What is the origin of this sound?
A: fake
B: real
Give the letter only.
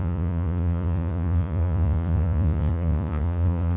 A